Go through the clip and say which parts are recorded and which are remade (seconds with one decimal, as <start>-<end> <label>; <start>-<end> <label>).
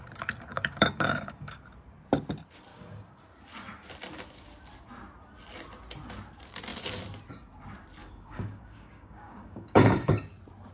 0.0-0.5 recorded; 0.5-1.6 remade; 1.6-2.7 recorded; 2.7-3.2 remade; 3.2-8.0 recorded; 8.0-10.1 remade; 10.1-10.7 recorded